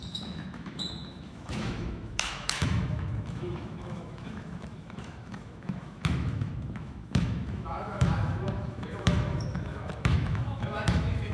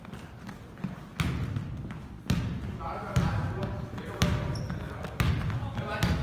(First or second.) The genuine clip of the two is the second